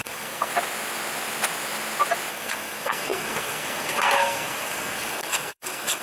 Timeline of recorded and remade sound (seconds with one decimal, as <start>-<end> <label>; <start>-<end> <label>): 0.0-0.5 remade; 0.5-2.3 recorded; 2.3-6.0 remade